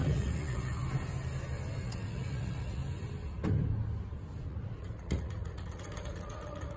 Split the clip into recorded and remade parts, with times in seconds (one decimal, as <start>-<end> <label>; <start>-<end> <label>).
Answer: 0.0-0.8 remade; 0.8-1.8 recorded; 1.8-2.8 remade; 2.8-4.5 recorded; 4.5-6.8 remade